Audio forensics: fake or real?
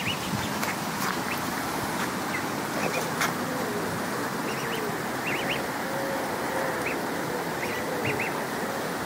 real